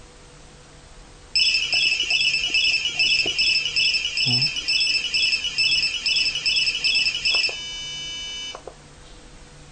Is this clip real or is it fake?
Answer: real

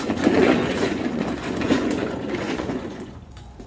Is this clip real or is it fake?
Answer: fake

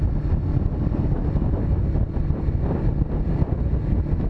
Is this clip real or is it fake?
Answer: real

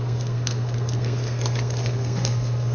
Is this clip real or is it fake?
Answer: fake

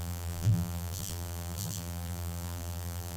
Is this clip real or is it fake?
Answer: fake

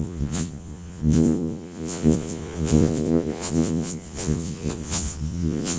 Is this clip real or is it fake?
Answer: fake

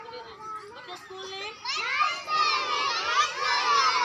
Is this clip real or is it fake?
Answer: real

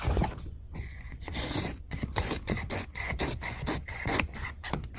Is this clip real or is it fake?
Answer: fake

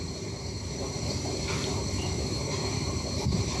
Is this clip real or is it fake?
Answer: fake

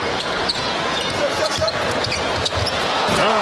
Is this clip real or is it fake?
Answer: fake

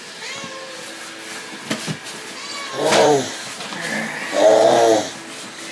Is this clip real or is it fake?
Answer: real